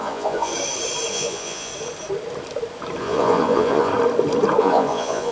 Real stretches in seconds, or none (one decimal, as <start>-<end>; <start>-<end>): 0.5-1.1; 1.7-3.0; 3.9-4.6